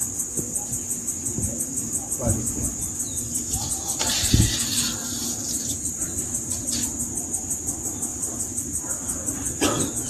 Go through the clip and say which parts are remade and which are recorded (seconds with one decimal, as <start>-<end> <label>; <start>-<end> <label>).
0.0-5.0 recorded; 5.0-6.7 remade; 6.7-8.1 recorded; 8.1-8.8 remade; 8.8-10.1 recorded